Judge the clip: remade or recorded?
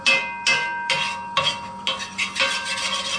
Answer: recorded